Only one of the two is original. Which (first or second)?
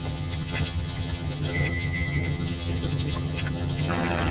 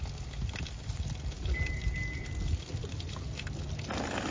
second